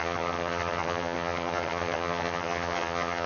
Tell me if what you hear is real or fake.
fake